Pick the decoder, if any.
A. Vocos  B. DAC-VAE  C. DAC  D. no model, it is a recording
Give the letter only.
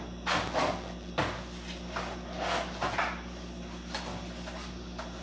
D